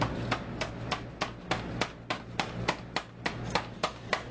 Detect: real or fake real